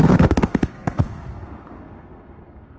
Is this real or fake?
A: fake